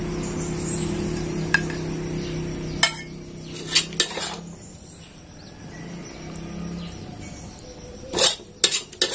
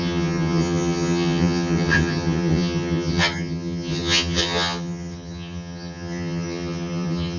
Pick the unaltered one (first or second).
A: first